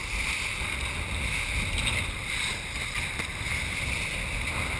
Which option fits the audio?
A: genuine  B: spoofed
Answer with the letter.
A